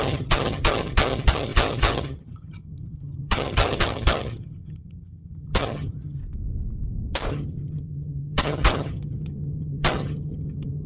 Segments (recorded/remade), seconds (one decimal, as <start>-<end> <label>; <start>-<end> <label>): 0.0-6.2 remade; 6.2-7.3 recorded; 7.3-10.9 remade